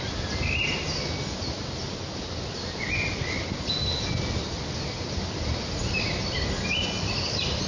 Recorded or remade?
recorded